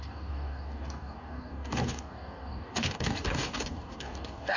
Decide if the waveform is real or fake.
fake